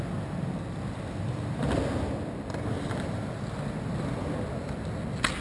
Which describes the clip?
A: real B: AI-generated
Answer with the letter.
A